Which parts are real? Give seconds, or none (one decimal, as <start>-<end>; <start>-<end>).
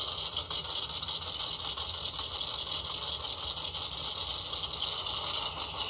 0.0-5.9